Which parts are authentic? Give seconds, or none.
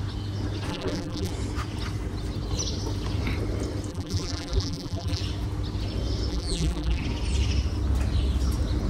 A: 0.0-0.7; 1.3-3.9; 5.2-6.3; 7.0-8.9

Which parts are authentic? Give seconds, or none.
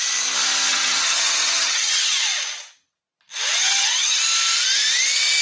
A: 0.0-0.7; 1.9-3.6; 4.2-5.4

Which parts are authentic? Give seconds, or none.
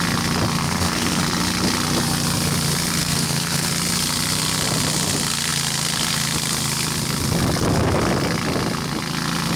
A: 0.0-0.6; 1.2-3.0; 3.7-9.6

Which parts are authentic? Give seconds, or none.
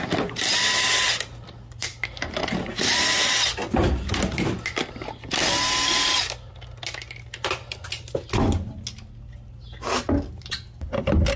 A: 0.0-11.4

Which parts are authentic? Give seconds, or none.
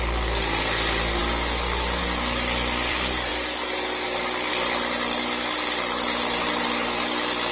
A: 0.0-7.5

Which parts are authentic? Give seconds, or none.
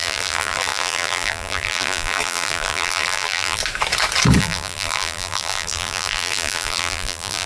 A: 3.6-4.4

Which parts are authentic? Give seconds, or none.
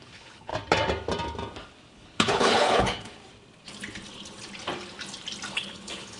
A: 0.5-1.9; 3.2-5.5